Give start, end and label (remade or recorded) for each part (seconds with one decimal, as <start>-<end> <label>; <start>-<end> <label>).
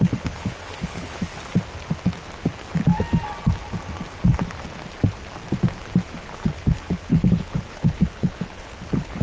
0.0-1.3 remade; 1.3-6.2 recorded; 6.2-9.2 remade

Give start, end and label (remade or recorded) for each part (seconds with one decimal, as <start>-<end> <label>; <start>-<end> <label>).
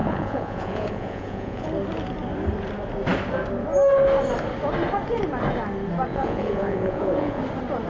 0.0-1.7 remade; 1.7-6.1 recorded; 6.1-7.4 remade; 7.4-7.9 recorded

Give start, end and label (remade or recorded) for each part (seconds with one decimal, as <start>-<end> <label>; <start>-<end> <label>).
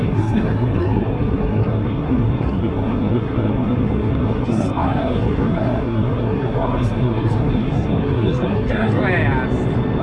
0.0-9.0 remade; 9.0-10.0 recorded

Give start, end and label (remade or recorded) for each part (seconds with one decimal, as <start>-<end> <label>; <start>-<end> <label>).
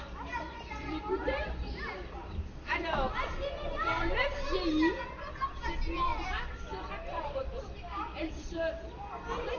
0.0-9.6 recorded